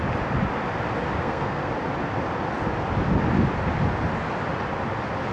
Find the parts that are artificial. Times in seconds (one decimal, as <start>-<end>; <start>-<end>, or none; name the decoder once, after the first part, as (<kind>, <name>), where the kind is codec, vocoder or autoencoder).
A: 1.2-1.7 (codec, SNAC)